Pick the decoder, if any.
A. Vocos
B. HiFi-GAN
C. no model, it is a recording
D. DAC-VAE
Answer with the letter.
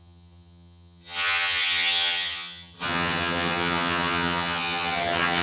B